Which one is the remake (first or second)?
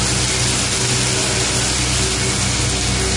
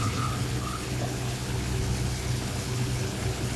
second